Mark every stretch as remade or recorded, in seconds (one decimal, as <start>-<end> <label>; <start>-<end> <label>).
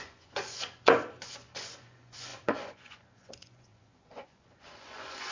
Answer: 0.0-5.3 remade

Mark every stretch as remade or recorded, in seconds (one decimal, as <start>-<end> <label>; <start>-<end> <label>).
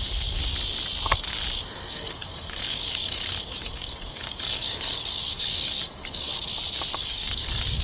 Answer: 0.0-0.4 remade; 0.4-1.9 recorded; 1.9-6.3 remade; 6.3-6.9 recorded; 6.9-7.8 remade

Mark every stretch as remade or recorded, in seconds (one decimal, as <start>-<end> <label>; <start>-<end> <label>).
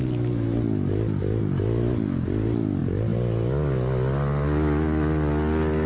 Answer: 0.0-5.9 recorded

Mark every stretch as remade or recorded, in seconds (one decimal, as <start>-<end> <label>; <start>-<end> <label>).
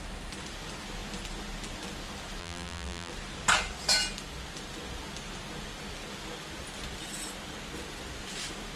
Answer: 0.0-2.4 recorded; 2.4-3.1 remade; 3.1-8.8 recorded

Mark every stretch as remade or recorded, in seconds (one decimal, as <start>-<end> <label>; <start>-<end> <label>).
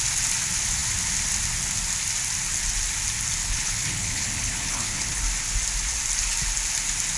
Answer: 0.0-3.4 recorded; 3.4-5.2 remade; 5.2-7.2 recorded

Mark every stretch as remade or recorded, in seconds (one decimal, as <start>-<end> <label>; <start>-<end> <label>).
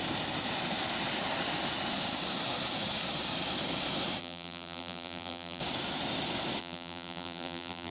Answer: 0.0-4.2 recorded; 4.2-5.6 remade; 5.6-6.6 recorded; 6.6-7.9 remade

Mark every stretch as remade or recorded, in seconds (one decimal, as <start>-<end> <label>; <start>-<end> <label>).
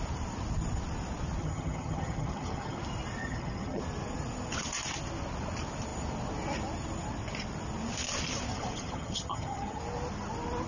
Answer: 0.0-1.4 recorded; 1.4-2.8 remade; 2.8-3.2 recorded; 3.2-3.8 remade; 3.8-8.5 recorded; 8.5-9.8 remade; 9.8-10.7 recorded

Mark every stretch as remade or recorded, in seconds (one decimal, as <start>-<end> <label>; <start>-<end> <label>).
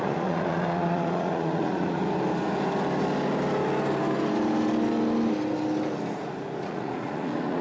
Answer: 0.0-2.0 remade; 2.0-6.6 recorded; 6.6-7.6 remade